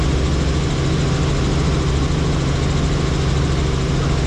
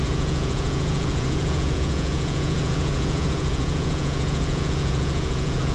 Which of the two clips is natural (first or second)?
first